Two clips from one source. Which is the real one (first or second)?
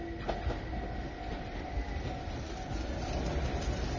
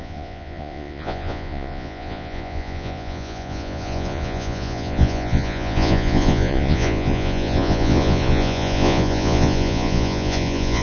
first